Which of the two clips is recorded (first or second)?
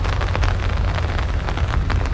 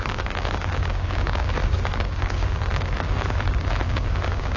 first